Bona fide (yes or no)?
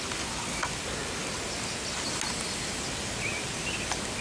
yes